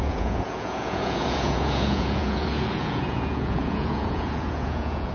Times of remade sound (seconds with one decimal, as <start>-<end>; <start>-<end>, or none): 0.0-5.1